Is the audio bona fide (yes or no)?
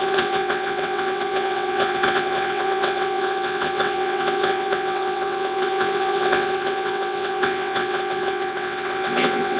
no